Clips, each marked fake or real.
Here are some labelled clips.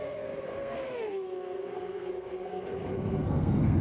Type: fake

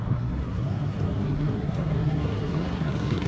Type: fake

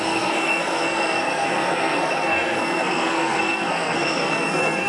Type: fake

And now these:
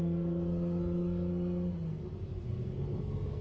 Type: fake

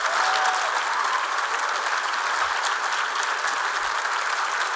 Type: real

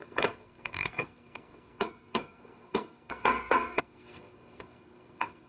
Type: fake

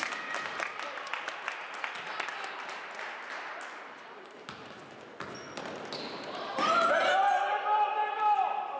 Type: real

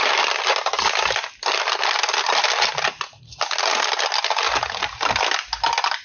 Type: real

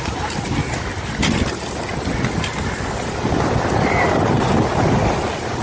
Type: real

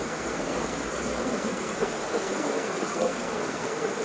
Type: fake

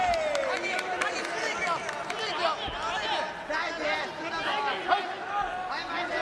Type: real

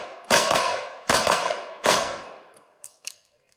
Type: fake